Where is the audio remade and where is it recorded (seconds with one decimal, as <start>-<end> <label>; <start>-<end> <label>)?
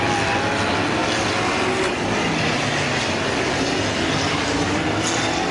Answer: 0.0-5.5 recorded